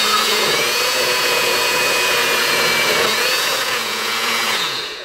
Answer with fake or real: fake